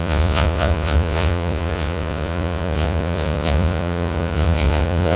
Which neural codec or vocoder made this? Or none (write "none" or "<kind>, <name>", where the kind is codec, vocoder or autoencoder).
vocoder, Vocos